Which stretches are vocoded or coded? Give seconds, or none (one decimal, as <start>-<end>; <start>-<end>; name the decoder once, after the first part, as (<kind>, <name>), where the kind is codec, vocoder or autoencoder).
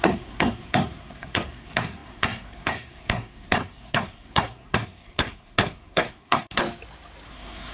0.0-6.6 (codec, SNAC); 7.3-7.7